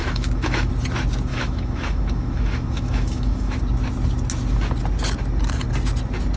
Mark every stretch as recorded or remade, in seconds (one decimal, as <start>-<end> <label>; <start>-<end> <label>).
0.0-0.7 remade; 0.7-1.3 recorded; 1.3-3.6 remade; 3.6-6.4 recorded